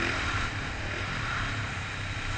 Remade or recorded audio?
recorded